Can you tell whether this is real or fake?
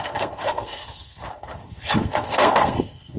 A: fake